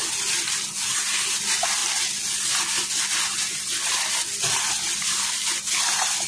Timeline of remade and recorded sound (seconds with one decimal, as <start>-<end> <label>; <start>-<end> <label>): 0.0-6.3 recorded